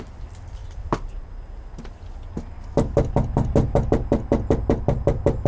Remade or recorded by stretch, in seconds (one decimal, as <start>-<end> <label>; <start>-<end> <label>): 0.0-5.5 recorded